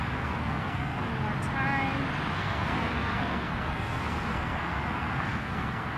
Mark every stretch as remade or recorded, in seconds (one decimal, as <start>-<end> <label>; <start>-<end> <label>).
0.0-1.1 remade; 1.1-2.3 recorded; 2.3-6.0 remade